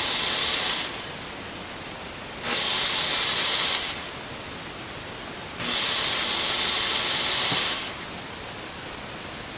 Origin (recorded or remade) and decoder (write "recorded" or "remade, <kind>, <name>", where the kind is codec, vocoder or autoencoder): recorded